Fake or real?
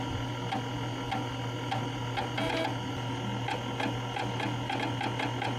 real